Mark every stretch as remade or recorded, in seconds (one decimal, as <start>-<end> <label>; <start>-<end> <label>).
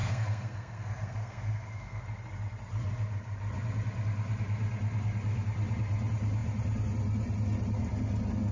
0.0-2.0 remade; 2.0-8.5 recorded